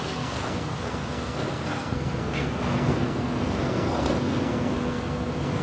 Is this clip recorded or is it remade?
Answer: remade